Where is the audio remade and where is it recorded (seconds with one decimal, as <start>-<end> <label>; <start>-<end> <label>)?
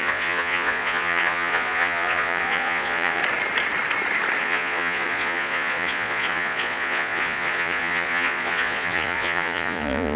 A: 0.0-3.2 remade; 3.2-4.4 recorded; 4.4-10.2 remade